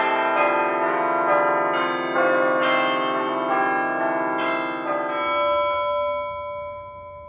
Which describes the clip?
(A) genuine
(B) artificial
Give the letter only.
A